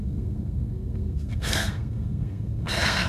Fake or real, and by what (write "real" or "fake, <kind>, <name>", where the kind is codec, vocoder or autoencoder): fake, codec, SNAC